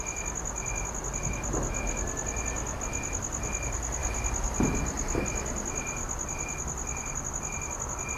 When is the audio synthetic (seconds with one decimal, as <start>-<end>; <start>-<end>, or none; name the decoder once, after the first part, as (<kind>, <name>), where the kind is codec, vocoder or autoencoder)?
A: none